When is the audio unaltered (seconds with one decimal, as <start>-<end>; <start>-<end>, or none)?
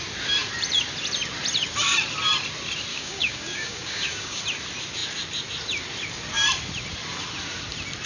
0.0-2.9; 4.4-8.1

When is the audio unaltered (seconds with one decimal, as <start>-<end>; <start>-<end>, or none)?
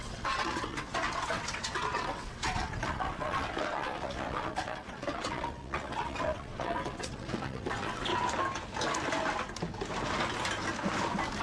8.1-11.4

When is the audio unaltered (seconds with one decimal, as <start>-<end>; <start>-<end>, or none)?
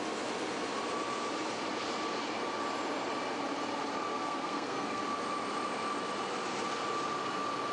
0.0-4.1; 5.0-7.7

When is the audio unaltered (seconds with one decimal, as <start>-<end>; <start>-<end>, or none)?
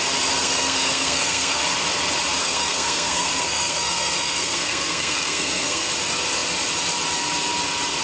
0.0-0.4; 1.6-2.4; 5.9-8.0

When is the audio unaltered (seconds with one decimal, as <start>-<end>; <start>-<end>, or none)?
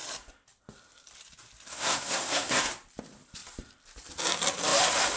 0.0-1.7; 2.7-5.2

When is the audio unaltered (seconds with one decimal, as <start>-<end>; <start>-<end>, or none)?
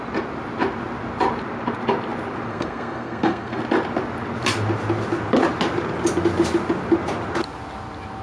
0.0-2.5; 3.6-8.2